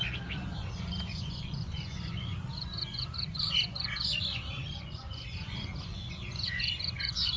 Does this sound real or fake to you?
fake